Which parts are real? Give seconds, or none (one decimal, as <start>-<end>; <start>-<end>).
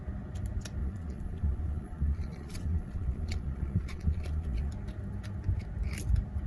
0.0-0.8; 4.7-6.5